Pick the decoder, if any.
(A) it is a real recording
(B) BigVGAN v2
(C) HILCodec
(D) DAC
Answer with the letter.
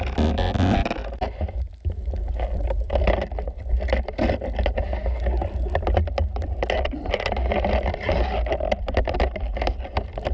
A